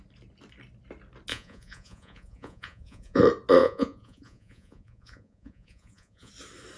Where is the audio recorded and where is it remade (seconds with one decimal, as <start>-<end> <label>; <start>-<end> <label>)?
0.0-1.3 recorded; 1.3-3.2 remade; 3.2-3.6 recorded; 3.6-6.3 remade; 6.3-6.8 recorded

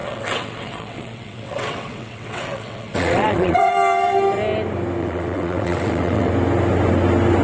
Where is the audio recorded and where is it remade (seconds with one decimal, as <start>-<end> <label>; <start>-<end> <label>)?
0.0-3.7 remade; 3.7-5.0 recorded; 5.0-6.3 remade; 6.3-7.4 recorded

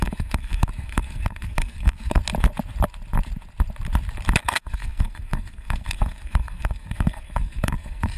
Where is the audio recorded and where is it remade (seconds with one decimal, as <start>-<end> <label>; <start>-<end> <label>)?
0.0-2.2 remade; 2.2-4.4 recorded; 4.4-8.2 remade

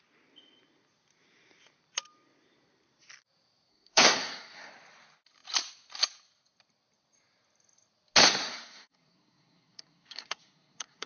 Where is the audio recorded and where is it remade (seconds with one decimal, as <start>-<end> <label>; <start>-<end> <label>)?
0.0-3.7 recorded; 3.7-4.7 remade; 4.7-8.4 recorded; 8.4-11.1 remade

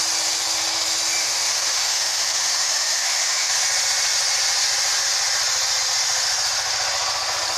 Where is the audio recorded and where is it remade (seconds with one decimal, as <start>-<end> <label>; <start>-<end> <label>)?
0.0-1.2 recorded; 1.2-3.5 remade; 3.5-7.6 recorded

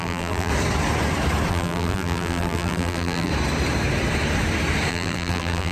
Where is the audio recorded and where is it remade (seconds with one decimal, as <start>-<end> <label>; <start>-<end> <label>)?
0.0-0.5 remade; 0.5-1.5 recorded; 1.5-3.3 remade; 3.3-4.9 recorded; 4.9-5.7 remade